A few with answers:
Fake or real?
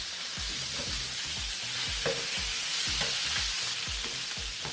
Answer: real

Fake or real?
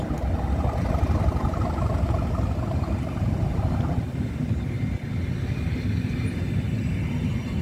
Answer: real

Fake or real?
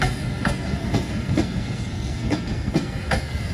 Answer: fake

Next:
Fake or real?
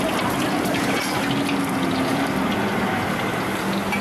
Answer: real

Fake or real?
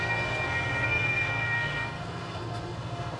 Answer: fake